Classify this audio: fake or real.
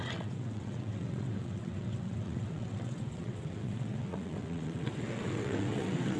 fake